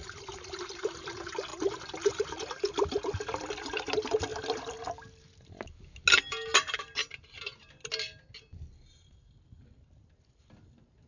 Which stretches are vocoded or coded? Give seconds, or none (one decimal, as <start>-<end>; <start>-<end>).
none